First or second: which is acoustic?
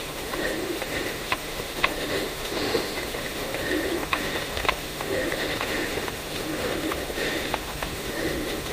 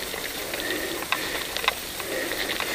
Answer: second